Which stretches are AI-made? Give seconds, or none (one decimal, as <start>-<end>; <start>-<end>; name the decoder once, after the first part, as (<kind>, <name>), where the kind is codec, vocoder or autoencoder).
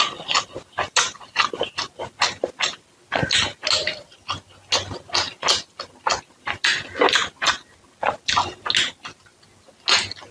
none